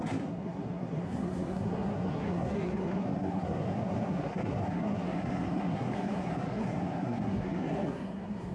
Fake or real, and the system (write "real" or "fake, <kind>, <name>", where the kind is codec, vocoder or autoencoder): fake, codec, SNAC